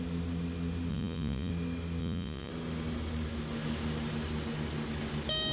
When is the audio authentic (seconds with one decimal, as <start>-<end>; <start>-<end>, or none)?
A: 0.0-0.9; 1.5-2.0; 2.5-5.5